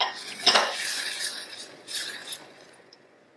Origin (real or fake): fake